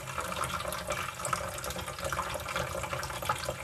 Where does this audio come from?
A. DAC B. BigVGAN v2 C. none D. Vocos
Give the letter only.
C